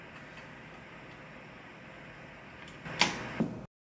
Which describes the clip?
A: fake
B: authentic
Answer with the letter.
B